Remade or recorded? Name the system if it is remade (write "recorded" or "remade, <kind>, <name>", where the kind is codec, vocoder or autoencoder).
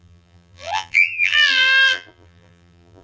remade, vocoder, BigVGAN v2